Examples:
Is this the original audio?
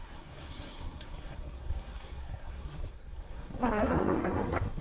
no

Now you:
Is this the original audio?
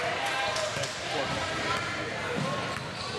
yes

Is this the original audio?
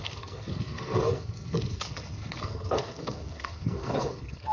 no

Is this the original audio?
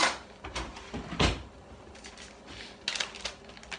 yes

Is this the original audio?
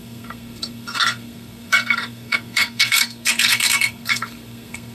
no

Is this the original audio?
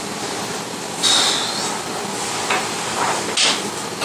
yes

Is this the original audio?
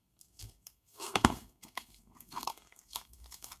no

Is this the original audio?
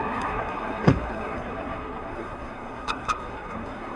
no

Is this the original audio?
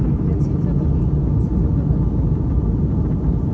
yes